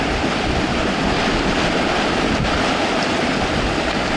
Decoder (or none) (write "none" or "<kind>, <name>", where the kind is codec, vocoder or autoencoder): none